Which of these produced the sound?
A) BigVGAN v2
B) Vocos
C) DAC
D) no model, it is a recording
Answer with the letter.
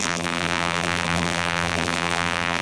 A